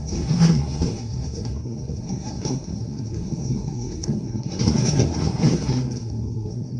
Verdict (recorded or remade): remade